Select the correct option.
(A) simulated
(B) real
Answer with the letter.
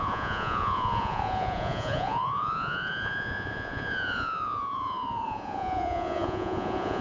A